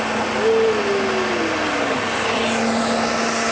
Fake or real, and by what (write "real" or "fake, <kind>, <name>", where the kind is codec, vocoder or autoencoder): real